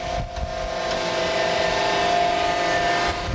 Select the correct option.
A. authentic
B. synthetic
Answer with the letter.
A